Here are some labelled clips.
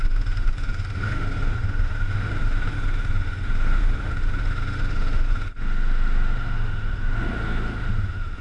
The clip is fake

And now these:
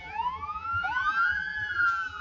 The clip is fake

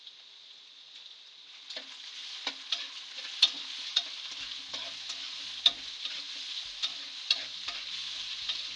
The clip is real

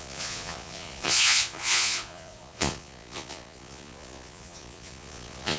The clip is fake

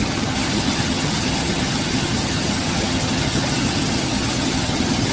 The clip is fake